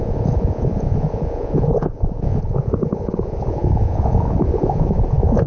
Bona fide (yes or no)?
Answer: no